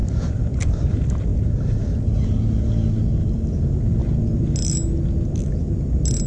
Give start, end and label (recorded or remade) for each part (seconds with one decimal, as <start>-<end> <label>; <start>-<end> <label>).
0.0-0.9 remade; 0.9-6.3 recorded